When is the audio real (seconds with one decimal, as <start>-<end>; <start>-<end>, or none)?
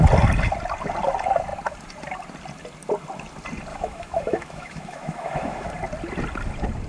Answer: 0.0-3.7; 5.7-6.9